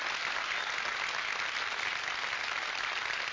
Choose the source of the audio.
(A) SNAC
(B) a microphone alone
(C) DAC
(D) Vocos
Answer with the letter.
B